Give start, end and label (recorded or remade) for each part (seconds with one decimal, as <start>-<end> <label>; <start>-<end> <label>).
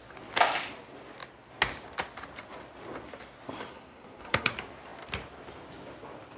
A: 0.0-3.7 recorded; 3.7-4.5 remade; 4.5-6.4 recorded